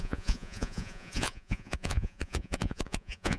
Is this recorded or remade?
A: remade